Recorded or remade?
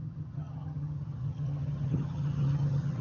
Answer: remade